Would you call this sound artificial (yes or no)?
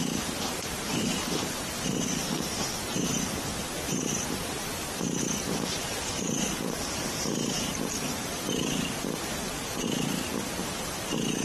yes